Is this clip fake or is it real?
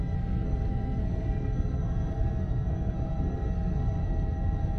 fake